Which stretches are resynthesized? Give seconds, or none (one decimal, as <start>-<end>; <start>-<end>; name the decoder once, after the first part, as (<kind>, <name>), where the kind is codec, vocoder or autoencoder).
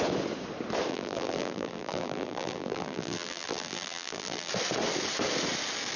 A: 0.9-4.5 (vocoder, BigVGAN v2)